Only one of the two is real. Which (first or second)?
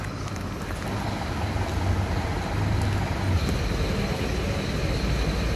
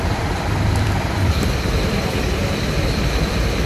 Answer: first